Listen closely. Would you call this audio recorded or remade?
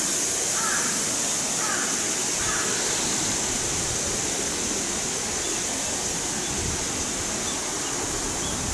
recorded